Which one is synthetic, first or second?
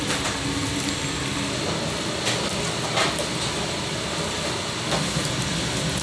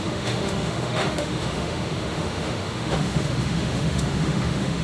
second